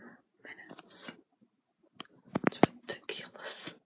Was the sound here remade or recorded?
recorded